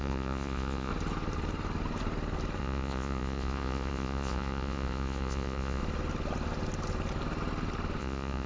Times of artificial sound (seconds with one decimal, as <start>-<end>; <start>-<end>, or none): 0.0-0.9; 2.6-5.8; 8.0-8.5